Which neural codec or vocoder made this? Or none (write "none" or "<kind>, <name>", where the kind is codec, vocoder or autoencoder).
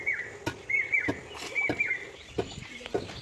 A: none